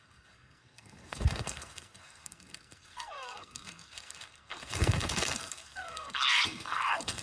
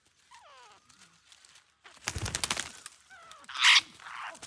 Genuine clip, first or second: second